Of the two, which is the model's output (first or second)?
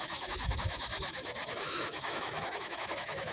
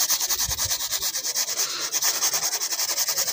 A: first